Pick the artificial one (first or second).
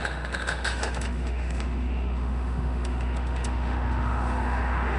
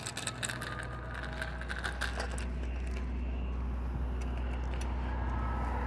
first